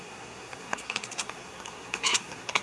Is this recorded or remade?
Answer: remade